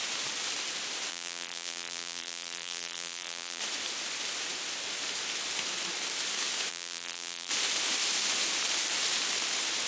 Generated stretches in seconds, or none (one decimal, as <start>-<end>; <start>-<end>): 1.1-3.6; 6.7-7.5